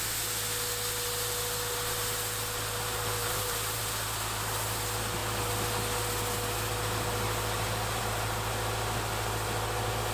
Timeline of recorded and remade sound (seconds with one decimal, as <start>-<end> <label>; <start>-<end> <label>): 0.0-3.2 recorded; 3.2-3.8 remade; 3.8-10.1 recorded